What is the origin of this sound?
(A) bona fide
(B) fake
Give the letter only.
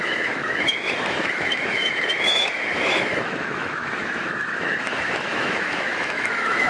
B